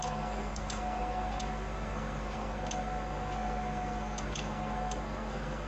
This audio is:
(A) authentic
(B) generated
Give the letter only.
B